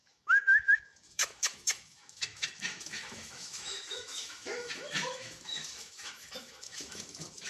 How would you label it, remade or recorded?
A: remade